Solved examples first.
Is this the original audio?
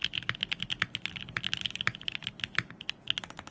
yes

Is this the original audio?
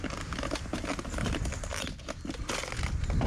yes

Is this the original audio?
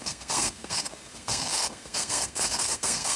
no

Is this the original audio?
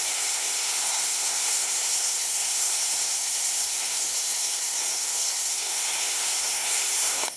no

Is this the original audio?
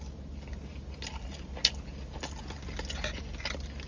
yes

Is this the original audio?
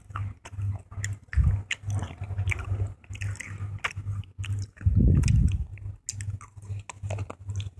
yes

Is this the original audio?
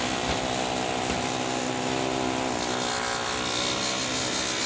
yes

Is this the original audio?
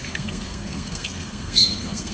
no